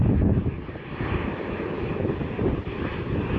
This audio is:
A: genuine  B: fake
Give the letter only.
A